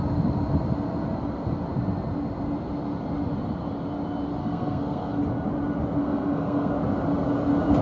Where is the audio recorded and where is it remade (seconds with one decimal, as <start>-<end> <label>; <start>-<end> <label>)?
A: 0.0-4.4 recorded; 4.4-5.1 remade; 5.1-6.0 recorded; 6.0-6.7 remade; 6.7-7.8 recorded

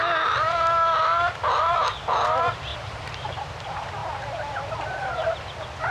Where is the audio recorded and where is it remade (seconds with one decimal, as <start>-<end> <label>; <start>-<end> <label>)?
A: 0.0-2.7 recorded; 2.7-3.3 remade; 3.3-5.9 recorded

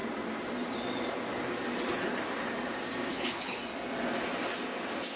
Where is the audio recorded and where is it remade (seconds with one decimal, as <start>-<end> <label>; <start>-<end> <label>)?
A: 0.0-3.1 recorded; 3.1-3.6 remade; 3.6-5.2 recorded

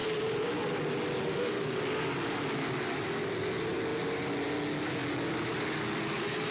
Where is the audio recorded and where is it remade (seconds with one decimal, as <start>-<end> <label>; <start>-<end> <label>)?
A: 0.0-1.2 recorded; 1.2-1.8 remade; 1.8-6.5 recorded

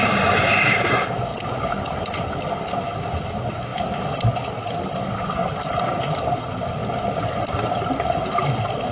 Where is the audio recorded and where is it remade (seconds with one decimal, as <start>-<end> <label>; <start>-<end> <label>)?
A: 0.0-5.4 recorded; 5.4-6.3 remade; 6.3-6.8 recorded; 6.8-7.4 remade; 7.4-8.9 recorded

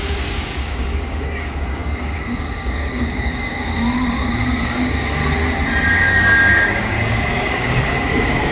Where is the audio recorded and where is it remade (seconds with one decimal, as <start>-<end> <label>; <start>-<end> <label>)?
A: 0.0-5.2 remade; 5.2-5.9 recorded; 5.9-8.5 remade